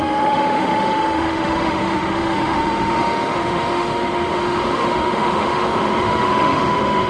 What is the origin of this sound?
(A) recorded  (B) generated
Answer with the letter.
B